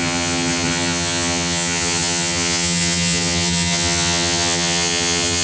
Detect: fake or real fake